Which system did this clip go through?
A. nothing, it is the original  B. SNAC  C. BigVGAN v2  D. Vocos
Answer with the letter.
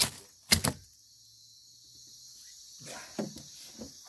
A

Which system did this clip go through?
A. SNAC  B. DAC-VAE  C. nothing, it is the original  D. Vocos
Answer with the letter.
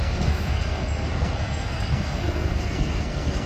A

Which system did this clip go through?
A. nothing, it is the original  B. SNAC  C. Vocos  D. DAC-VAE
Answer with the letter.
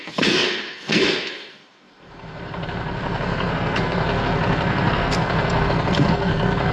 B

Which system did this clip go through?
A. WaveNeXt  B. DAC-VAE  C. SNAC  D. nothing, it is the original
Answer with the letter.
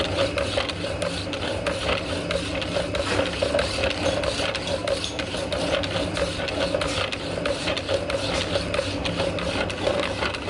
D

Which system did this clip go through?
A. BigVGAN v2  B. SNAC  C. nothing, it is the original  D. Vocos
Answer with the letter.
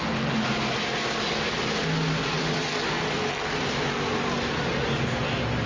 C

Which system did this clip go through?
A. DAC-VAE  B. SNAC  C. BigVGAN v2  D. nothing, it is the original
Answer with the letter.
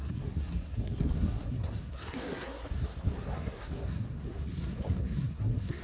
B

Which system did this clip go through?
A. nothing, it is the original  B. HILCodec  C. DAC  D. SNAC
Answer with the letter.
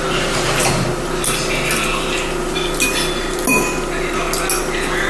A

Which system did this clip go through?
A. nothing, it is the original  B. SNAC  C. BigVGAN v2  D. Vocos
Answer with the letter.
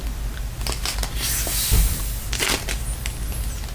A